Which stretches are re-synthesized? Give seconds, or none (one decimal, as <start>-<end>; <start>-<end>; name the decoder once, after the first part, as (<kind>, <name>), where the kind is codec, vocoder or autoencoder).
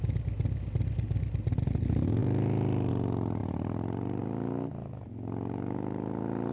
2.2-2.9 (vocoder, BigVGAN v2); 3.4-4.2